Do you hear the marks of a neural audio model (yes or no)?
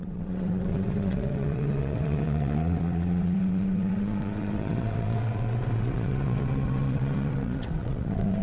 yes